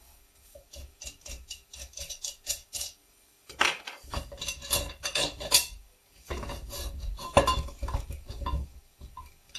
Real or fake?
fake